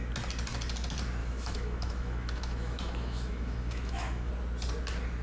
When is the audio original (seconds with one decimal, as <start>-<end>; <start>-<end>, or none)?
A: 0.0-1.2; 4.3-5.2